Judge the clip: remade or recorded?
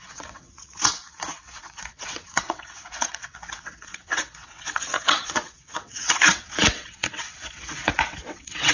remade